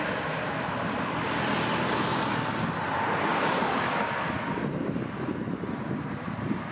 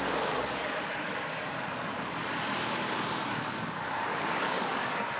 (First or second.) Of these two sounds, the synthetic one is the second